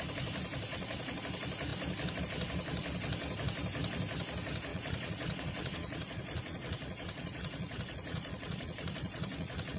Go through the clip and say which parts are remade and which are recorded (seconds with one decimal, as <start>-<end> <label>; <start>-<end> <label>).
0.0-0.7 recorded; 0.7-1.2 remade; 1.2-4.7 recorded; 4.7-9.8 remade